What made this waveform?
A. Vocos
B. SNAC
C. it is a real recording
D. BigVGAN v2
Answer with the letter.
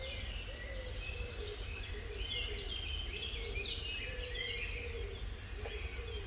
C